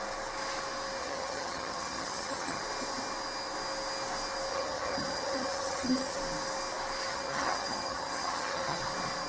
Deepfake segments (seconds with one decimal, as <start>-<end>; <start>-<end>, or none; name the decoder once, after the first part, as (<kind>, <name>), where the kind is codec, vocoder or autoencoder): 1.0-2.6 (vocoder, HiFi-GAN); 4.5-6.2; 7.1-8.8